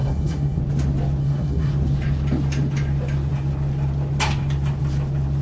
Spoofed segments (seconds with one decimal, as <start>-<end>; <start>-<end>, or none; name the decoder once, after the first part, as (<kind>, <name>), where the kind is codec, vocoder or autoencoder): 0.0-0.6 (codec, SNAC); 1.2-1.7